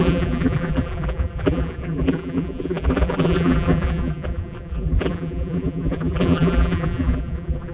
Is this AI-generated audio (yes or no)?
yes